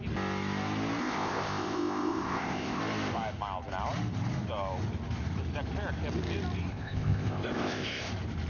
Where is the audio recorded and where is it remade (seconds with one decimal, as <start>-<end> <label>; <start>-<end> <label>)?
0.0-1.0 recorded; 1.0-2.8 remade; 2.8-6.7 recorded; 6.7-8.1 remade; 8.1-8.5 recorded